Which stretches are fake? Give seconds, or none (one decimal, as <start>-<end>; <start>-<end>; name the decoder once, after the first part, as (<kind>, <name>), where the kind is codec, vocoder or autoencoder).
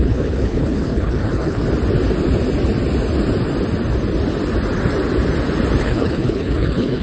0.0-1.6 (codec, HILCodec); 5.8-7.0